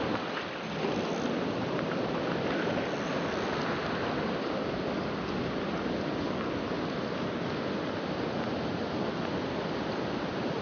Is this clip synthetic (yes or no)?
no